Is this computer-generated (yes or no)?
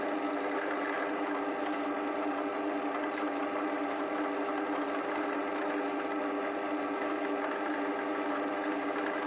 no